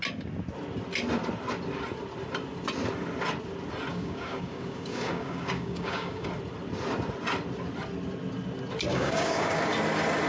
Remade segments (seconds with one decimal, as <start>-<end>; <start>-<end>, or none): 3.9-6.3; 8.9-9.6